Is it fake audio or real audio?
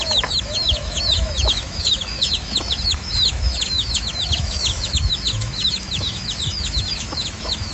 fake